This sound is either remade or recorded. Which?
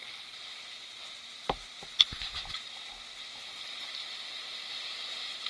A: recorded